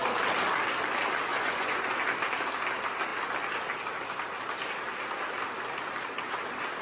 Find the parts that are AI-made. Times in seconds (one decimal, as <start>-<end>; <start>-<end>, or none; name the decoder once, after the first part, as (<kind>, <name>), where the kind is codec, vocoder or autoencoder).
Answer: 1.3-1.8 (vocoder, Vocos)